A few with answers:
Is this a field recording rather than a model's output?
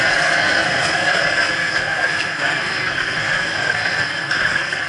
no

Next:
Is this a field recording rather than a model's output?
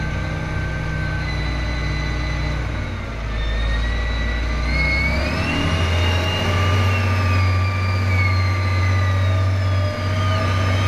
yes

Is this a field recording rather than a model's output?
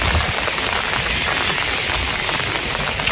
yes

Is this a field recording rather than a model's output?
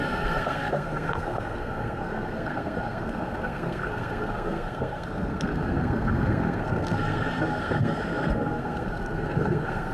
no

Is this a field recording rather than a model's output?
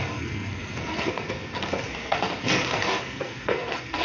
no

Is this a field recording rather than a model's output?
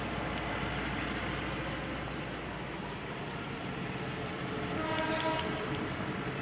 yes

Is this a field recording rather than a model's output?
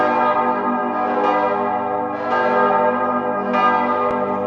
yes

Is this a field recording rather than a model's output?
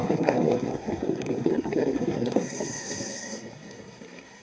no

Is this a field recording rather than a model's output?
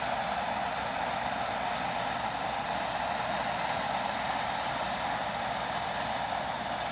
yes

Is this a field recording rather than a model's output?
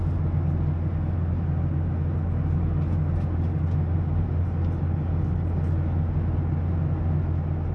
yes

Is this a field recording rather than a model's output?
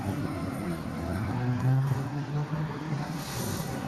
no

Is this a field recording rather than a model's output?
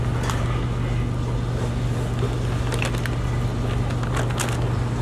yes